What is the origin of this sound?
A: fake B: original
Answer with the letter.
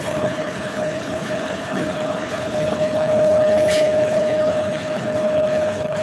A